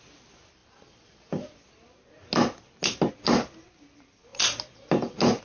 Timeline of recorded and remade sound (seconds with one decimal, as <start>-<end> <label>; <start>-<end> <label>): 0.0-5.4 recorded